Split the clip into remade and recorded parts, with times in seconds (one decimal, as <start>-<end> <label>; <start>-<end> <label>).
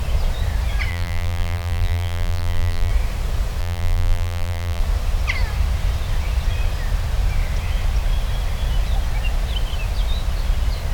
0.0-0.9 recorded; 0.9-2.9 remade; 2.9-3.6 recorded; 3.6-4.8 remade; 4.8-10.9 recorded